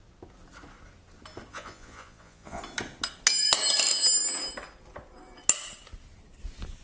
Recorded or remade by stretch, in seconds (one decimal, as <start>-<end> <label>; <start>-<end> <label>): 0.0-1.5 recorded; 1.5-2.6 remade; 2.6-6.8 recorded